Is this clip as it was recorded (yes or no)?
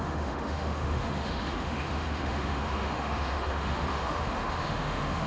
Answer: no